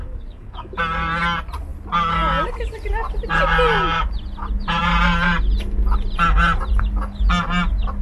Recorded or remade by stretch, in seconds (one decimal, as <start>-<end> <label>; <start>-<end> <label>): 0.0-0.8 remade; 0.8-8.0 recorded